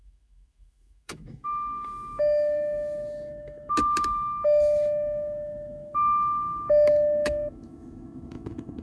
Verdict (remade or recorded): remade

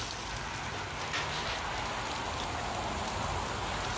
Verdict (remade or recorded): recorded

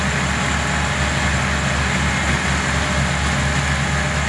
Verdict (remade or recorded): recorded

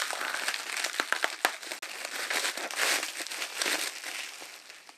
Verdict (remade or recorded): recorded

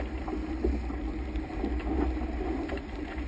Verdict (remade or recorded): recorded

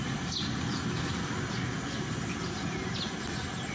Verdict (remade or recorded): recorded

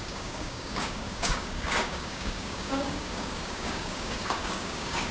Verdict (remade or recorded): remade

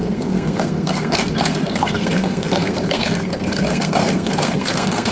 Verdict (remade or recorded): remade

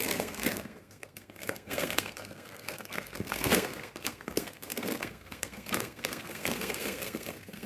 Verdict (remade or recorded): remade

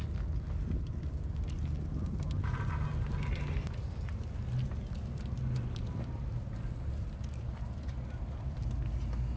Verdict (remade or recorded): recorded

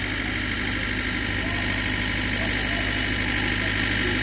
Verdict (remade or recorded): recorded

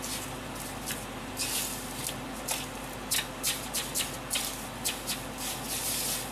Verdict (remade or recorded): recorded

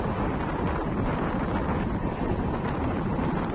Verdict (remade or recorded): recorded